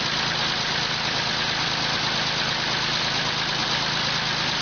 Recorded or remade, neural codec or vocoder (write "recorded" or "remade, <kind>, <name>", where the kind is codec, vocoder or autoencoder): recorded